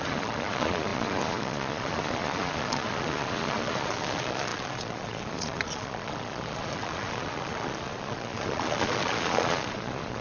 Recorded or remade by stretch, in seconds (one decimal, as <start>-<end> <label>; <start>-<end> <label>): 0.0-10.2 remade